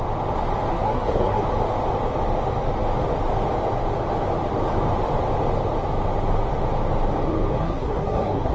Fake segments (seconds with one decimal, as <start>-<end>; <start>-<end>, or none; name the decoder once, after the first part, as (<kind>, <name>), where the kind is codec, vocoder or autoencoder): 0.7-1.4 (codec, SNAC); 7.6-8.5